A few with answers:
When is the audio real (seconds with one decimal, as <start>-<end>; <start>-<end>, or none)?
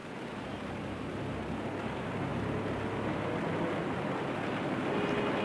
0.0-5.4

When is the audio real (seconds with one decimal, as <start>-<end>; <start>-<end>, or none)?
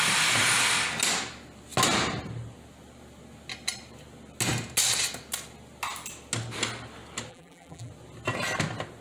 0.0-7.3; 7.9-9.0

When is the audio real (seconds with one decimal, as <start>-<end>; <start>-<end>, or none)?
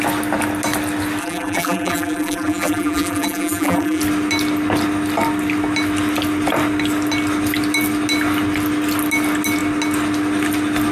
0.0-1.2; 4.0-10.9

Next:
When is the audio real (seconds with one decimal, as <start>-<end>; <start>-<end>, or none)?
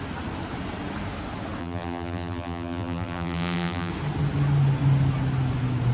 0.0-1.6; 3.9-5.9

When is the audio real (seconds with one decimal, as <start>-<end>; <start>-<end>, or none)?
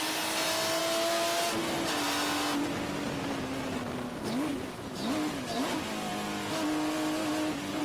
0.0-7.8